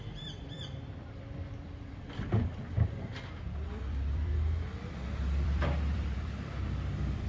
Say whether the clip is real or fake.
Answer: fake